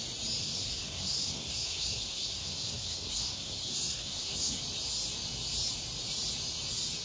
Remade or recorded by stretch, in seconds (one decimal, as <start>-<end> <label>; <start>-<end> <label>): 0.0-0.4 recorded; 0.4-4.6 remade; 4.6-7.0 recorded